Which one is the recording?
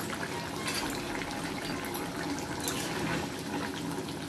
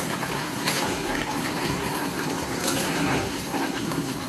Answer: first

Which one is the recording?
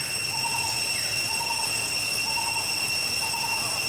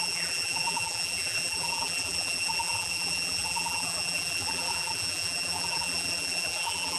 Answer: first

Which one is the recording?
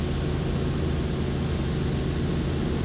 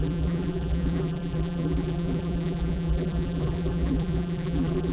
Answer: first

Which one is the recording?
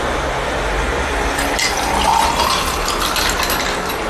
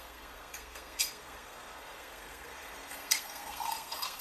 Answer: first